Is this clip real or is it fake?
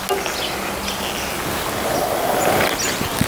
real